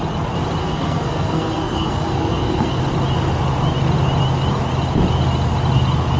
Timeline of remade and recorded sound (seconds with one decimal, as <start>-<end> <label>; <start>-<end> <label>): 0.0-0.6 recorded; 0.6-2.8 remade; 2.8-6.2 recorded